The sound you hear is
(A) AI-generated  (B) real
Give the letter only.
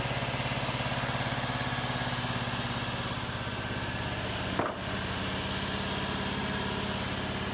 B